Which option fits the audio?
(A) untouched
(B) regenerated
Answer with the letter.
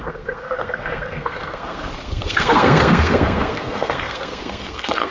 B